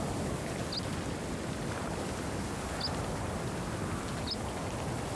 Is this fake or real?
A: real